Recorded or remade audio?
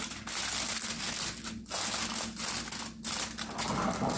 recorded